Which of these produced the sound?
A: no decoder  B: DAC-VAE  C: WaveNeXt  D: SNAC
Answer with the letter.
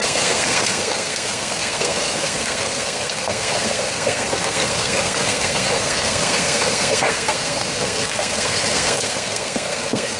D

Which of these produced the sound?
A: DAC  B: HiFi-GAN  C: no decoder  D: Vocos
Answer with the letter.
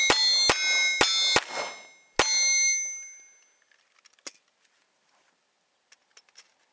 C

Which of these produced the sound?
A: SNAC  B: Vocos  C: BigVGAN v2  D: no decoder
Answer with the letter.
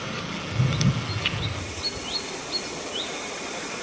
D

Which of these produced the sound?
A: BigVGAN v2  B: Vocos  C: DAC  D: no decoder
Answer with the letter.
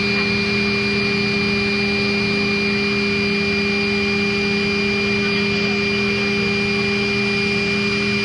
D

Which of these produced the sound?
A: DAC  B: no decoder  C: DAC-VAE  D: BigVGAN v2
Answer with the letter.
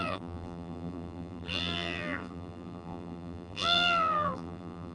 D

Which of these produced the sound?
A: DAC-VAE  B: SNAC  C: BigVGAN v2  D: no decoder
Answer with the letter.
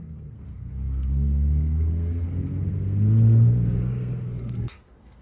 B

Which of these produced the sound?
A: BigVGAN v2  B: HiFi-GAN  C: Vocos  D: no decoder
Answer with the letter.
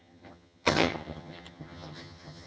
B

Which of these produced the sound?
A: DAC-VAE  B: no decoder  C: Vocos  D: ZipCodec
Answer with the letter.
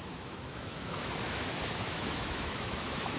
A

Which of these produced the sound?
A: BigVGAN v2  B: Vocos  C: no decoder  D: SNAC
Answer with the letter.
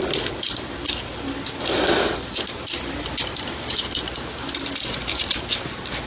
C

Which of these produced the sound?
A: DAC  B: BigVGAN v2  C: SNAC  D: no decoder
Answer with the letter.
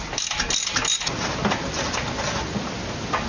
D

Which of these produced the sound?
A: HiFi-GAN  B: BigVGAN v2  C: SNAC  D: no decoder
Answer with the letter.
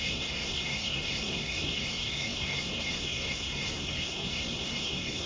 C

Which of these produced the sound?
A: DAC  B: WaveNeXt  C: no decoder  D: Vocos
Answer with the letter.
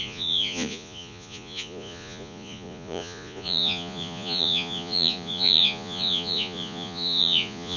D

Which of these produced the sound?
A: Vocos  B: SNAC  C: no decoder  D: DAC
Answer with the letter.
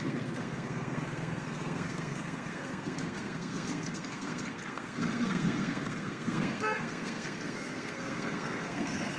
B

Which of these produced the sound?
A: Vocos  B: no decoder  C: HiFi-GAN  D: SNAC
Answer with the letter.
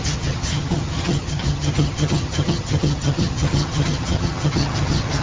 C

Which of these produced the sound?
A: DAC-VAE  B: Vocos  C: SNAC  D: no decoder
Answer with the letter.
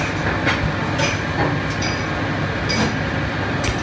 D